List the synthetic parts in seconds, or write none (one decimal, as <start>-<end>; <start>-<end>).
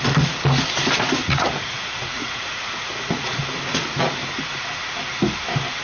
1.2-3.4